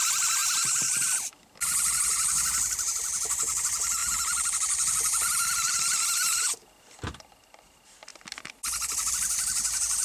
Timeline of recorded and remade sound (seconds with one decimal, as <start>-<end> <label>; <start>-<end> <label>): 0.0-0.4 recorded; 0.4-1.1 remade; 1.1-10.0 recorded